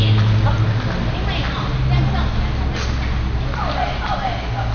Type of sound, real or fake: real